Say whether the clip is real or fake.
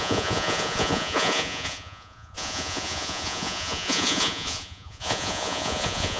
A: fake